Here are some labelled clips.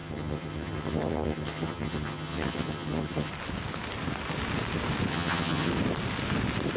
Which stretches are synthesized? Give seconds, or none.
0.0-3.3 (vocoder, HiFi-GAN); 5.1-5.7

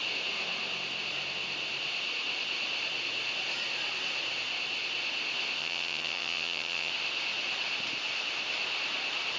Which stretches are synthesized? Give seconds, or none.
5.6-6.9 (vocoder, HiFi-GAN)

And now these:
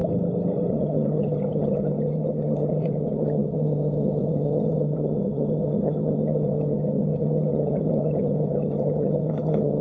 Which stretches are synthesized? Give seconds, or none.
0.7-9.8 (vocoder, HiFi-GAN)

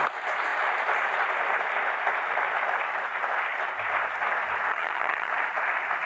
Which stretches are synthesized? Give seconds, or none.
4.7-5.3 (vocoder, HiFi-GAN)

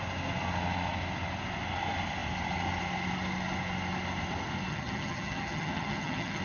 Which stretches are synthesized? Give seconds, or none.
4.7-6.4 (vocoder, HiFi-GAN)

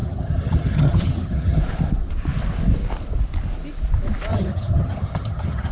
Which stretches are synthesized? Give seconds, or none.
0.0-1.6 (vocoder, HiFi-GAN); 4.3-5.7

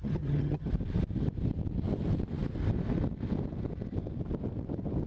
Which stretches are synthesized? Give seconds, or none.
0.0-0.7 (vocoder, HiFi-GAN)